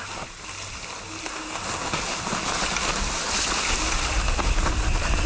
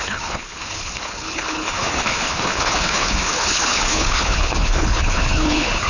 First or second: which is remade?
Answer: second